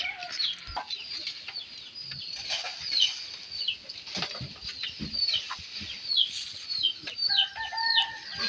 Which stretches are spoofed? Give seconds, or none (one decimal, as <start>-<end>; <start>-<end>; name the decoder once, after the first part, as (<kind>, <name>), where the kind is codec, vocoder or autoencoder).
none